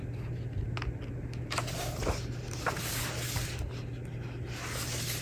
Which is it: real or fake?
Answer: real